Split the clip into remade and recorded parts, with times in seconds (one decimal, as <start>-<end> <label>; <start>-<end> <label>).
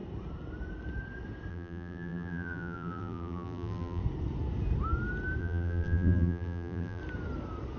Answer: 0.0-1.5 recorded; 1.5-4.0 remade; 4.0-5.4 recorded; 5.4-7.0 remade; 7.0-7.8 recorded